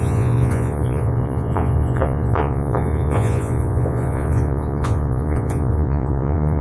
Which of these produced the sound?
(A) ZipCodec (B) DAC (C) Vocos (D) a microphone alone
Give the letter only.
C